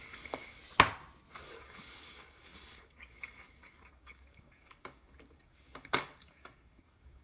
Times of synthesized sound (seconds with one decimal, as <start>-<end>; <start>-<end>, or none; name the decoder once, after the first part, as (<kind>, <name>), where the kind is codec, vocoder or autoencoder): 0.0-0.6 (codec, DAC); 1.3-7.2